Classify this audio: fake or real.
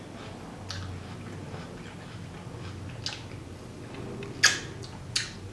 real